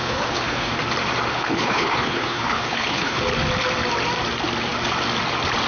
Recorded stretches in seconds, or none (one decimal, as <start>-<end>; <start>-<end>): 0.7-1.3; 3.2-5.7